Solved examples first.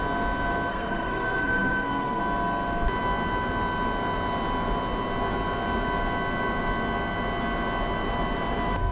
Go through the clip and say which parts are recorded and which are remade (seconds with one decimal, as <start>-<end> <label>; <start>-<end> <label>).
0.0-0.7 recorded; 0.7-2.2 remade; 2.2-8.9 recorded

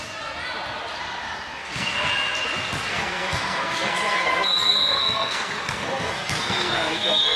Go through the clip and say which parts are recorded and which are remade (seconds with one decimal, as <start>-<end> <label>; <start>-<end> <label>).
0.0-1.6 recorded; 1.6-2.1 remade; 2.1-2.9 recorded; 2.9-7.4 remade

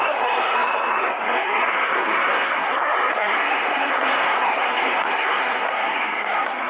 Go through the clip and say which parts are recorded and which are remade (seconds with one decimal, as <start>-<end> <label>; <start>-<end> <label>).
0.0-6.7 remade

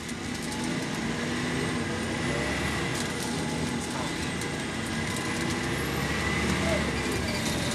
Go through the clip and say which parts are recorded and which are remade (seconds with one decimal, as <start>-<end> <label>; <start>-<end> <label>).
0.0-7.7 recorded